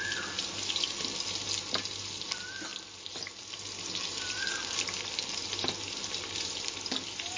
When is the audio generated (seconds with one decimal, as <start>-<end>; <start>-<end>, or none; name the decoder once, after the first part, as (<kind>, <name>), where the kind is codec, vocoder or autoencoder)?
none